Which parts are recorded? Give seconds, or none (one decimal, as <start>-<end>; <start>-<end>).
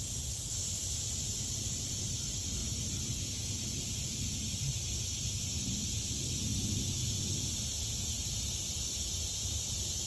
0.0-0.6; 2.1-10.1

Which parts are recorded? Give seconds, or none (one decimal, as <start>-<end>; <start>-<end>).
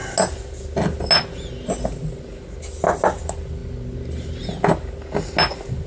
0.0-5.9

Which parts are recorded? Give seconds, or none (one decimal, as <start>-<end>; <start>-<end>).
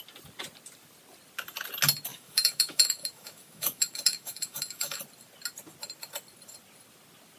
0.0-2.1; 5.0-7.4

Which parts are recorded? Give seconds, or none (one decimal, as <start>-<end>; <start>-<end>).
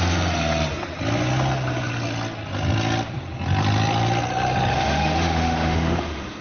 0.0-4.7